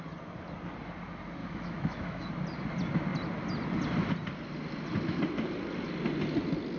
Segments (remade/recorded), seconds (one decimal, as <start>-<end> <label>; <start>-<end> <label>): 0.0-1.4 recorded; 1.4-2.3 remade; 2.3-6.8 recorded